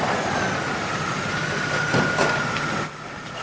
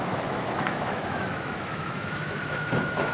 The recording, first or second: first